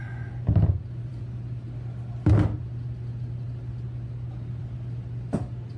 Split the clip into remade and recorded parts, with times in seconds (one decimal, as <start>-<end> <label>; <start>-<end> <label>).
0.0-5.8 recorded